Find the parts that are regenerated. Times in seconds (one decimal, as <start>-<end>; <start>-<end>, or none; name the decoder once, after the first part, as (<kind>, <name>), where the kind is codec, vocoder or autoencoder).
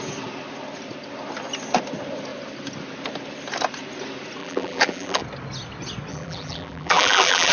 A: 4.4-5.2 (vocoder, BigVGAN v2); 6.1-7.5